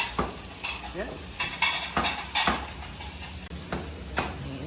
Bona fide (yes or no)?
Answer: yes